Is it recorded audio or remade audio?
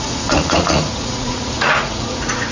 remade